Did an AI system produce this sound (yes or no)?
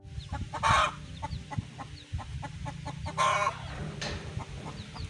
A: no